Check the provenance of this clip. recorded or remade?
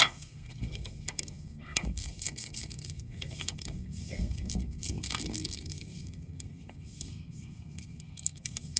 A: remade